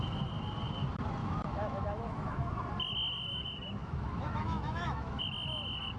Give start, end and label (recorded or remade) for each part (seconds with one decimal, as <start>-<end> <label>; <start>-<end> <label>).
0.0-1.2 recorded; 1.2-2.5 remade; 2.5-3.8 recorded; 3.8-5.2 remade; 5.2-6.0 recorded